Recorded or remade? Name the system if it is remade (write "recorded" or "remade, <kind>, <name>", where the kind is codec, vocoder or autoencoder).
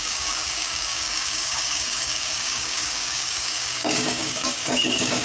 remade, codec, DAC